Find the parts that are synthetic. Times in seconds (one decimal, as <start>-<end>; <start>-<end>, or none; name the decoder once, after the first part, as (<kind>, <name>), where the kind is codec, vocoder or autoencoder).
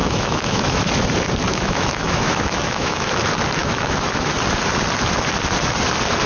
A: 0.0-0.8 (autoencoder, DAC-VAE); 1.5-3.2; 3.6-4.3